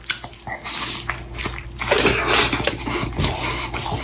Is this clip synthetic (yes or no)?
no